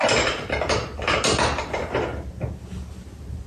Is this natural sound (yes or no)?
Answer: yes